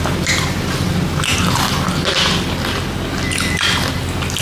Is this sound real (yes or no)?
yes